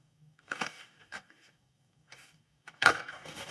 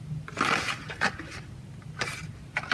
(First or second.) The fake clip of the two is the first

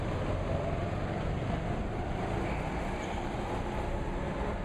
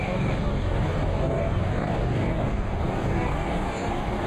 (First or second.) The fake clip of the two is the second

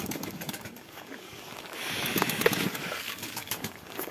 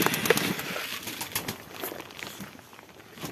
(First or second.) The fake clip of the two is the first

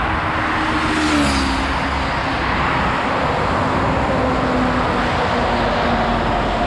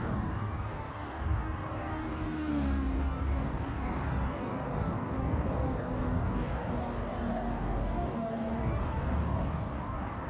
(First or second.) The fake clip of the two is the second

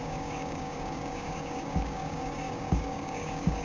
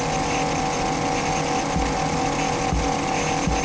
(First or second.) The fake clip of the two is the first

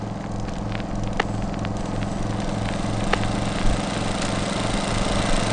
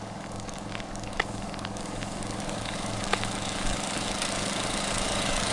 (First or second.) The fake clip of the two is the second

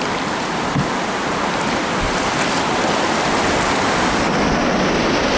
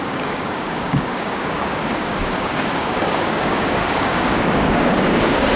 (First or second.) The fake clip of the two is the second